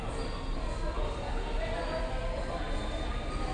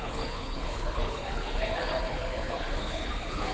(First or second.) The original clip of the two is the first